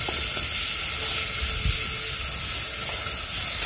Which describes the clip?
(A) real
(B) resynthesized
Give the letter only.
A